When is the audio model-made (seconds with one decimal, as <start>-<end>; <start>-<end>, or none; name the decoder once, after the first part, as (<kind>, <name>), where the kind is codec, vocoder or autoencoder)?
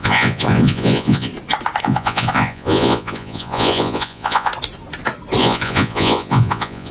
0.0-1.3 (vocoder, Vocos); 1.8-4.5; 5.4-6.9